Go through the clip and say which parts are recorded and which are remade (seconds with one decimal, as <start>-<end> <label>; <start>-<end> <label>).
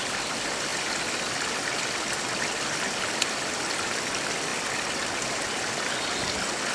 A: 0.0-6.7 recorded